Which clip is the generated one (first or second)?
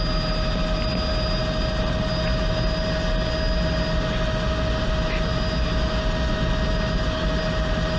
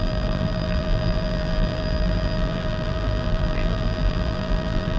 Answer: second